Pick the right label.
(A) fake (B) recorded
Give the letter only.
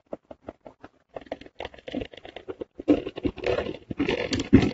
B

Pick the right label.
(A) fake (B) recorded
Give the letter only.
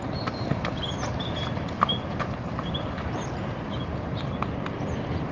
B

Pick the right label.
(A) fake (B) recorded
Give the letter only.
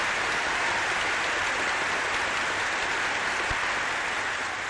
B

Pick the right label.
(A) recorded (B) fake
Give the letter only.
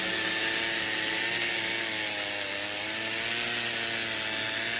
A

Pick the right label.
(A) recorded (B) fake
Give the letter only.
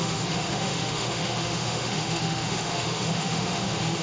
B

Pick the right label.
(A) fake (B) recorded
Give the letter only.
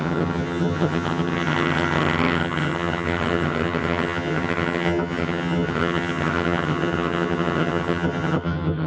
A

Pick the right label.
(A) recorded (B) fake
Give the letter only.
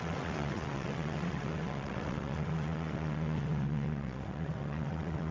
B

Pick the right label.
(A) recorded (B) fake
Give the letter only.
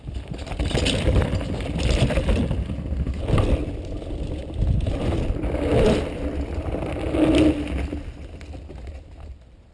A